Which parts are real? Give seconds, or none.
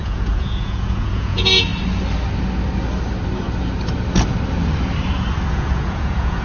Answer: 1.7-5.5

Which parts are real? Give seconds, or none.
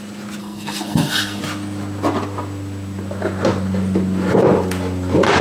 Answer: 0.0-0.4; 1.4-5.4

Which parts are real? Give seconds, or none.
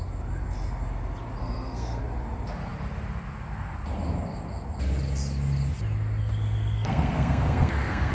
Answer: 0.0-1.4; 2.0-6.2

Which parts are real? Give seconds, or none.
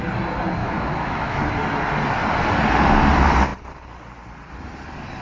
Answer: 0.0-0.6; 1.4-5.2